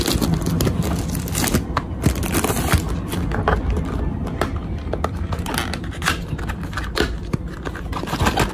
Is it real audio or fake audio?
real